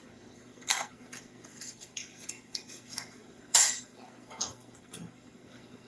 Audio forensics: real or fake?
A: fake